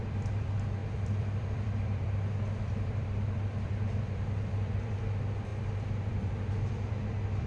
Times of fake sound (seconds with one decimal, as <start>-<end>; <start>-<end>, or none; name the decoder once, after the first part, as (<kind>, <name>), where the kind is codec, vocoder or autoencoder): 0.0-7.5 (vocoder, BigVGAN v2)

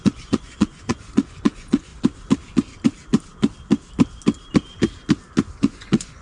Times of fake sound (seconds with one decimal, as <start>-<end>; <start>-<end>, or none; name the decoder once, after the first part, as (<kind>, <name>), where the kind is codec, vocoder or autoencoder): 0.0-1.9 (vocoder, Vocos); 5.6-6.2

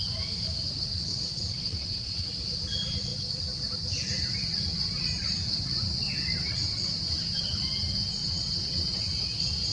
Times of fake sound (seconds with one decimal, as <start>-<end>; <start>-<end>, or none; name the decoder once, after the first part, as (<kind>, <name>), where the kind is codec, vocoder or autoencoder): 1.1-2.3 (vocoder, WaveNeXt); 8.2-9.2

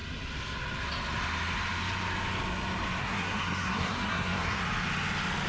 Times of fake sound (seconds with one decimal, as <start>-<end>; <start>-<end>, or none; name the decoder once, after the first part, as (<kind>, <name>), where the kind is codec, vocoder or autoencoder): 3.0-4.6 (codec, SNAC)

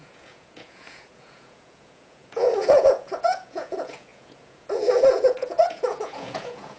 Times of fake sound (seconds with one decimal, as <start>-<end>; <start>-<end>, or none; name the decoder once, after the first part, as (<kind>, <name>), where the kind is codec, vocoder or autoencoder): 0.0-6.8 (vocoder, Vocos)

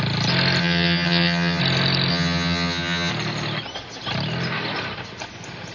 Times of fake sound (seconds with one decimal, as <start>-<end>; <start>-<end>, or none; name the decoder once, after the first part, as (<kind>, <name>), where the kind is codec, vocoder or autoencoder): 0.6-1.6 (vocoder, HiFi-GAN); 2.1-3.1